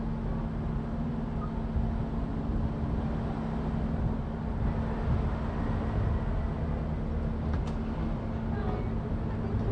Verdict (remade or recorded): recorded